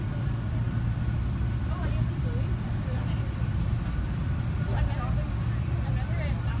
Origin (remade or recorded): recorded